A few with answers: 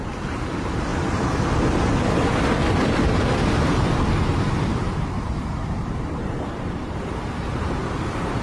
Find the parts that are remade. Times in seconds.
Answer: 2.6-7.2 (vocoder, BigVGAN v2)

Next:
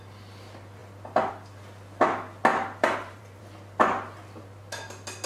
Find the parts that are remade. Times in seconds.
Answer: 2.5-3.4 (vocoder, BigVGAN v2)

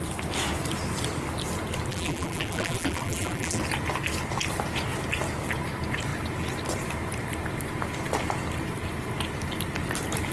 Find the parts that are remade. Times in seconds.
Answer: 1.9-3.6 (vocoder, BigVGAN v2)

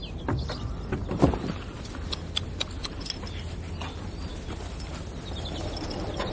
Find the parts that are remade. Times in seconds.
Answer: 1.0-2.1 (vocoder, BigVGAN v2); 4.3-4.9

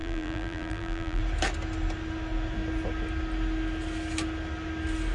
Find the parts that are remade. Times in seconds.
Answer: 0.0-1.2 (vocoder, BigVGAN v2)

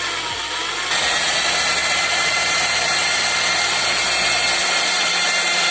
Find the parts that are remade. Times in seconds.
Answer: 1.8-3.8 (vocoder, BigVGAN v2); 4.6-5.1

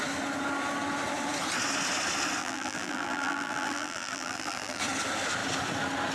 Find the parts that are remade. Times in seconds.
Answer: 2.4-4.8 (vocoder, BigVGAN v2)